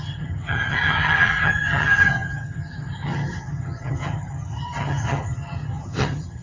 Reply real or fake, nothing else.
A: fake